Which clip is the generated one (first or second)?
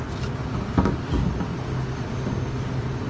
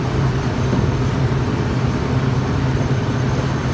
second